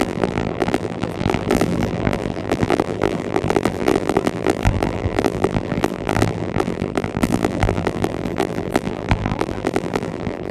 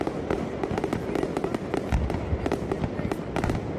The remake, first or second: first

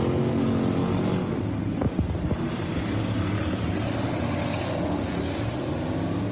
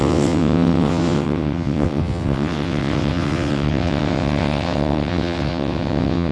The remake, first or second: second